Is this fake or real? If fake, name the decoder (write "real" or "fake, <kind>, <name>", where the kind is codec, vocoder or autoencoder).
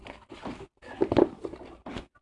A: real